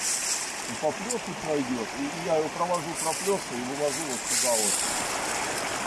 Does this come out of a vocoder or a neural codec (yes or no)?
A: no